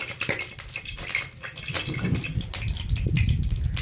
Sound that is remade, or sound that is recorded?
recorded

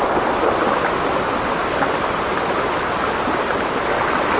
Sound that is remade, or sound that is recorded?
recorded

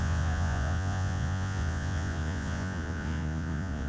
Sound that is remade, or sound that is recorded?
remade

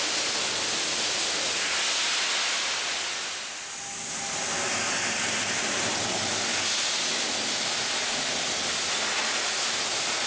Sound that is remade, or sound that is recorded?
recorded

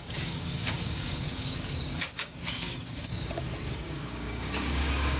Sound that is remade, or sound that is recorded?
remade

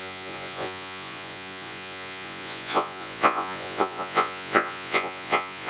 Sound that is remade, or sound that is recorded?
remade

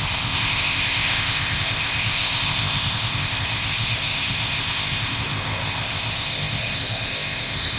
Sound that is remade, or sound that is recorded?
remade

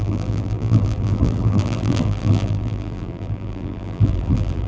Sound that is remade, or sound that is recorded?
remade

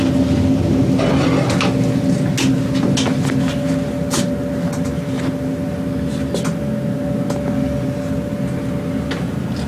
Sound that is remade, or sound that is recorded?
recorded